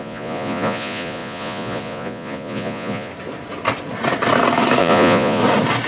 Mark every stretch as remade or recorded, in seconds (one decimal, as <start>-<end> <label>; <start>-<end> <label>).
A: 0.0-3.1 remade; 3.1-4.8 recorded; 4.8-5.4 remade; 5.4-5.9 recorded